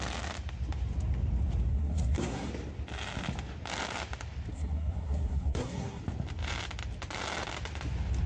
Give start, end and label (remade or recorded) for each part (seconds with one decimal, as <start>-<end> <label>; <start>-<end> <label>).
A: 0.0-1.7 recorded; 1.7-2.5 remade; 2.5-4.5 recorded; 4.5-6.0 remade; 6.0-8.3 recorded